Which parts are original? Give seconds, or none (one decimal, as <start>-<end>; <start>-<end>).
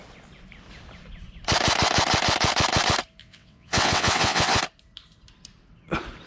0.0-3.2; 4.6-6.3